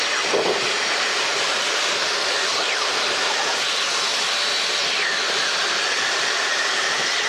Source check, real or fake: fake